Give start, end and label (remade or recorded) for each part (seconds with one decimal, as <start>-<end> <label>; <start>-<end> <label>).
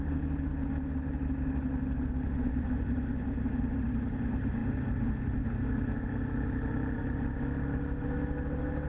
0.0-8.9 recorded